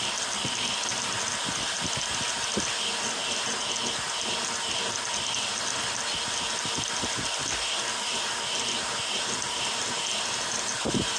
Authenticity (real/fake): real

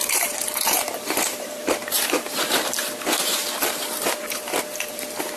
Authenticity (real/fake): fake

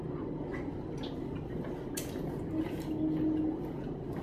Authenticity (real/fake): real